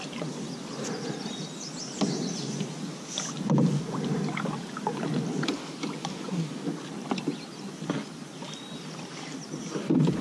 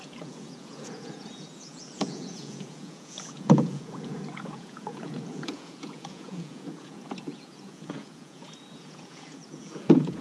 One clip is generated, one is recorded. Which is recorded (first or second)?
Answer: first